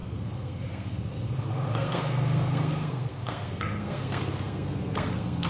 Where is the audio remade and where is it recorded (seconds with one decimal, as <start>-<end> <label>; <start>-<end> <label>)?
0.0-5.5 remade